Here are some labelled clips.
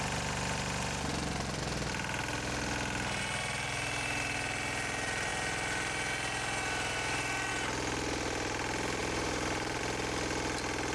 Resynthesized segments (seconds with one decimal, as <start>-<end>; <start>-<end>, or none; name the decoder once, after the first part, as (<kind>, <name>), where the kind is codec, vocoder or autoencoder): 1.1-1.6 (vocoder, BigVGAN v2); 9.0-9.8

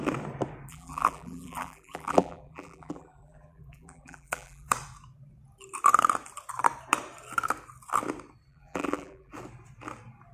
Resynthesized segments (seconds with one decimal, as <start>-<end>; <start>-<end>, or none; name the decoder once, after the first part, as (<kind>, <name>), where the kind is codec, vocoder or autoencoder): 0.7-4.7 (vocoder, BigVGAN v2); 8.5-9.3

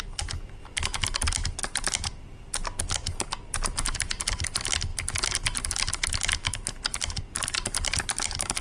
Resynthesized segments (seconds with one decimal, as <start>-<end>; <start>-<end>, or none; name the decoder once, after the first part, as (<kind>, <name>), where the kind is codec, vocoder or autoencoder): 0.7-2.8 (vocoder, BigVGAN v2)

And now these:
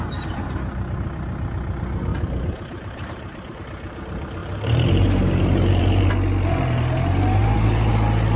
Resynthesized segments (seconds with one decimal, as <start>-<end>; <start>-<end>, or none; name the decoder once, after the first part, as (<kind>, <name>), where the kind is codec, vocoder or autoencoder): 2.1-3.6 (vocoder, BigVGAN v2); 4.4-6.1; 7.4-7.9

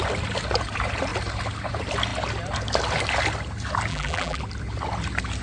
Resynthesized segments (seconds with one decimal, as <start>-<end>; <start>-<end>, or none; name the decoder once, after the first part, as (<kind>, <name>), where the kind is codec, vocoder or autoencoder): 3.9-4.4 (vocoder, BigVGAN v2)